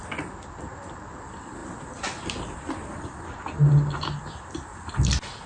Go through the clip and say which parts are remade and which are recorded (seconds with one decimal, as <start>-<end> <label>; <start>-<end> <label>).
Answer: 0.0-5.5 recorded